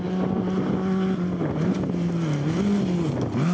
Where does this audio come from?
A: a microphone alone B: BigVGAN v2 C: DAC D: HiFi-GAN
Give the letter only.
A